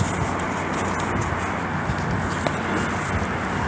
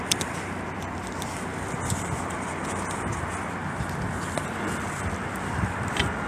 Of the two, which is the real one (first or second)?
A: first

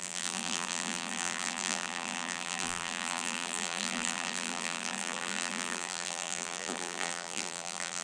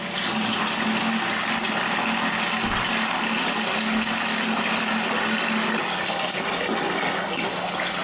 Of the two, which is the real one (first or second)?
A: second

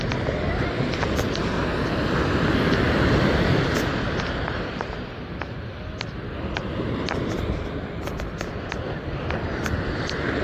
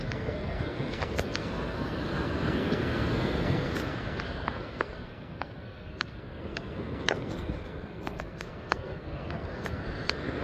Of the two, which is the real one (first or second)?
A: first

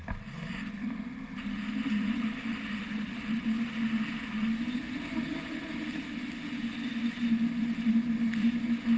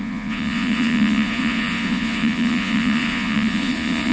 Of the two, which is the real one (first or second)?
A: first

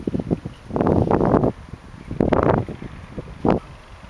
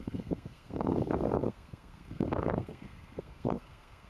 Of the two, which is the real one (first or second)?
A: first